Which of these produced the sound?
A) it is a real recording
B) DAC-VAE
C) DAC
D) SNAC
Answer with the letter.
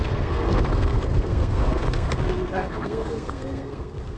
D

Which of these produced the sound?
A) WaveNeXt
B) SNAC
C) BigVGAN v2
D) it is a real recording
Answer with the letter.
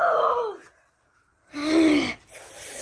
D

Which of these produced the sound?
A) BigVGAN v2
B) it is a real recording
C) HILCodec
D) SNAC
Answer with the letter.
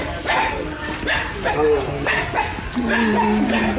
B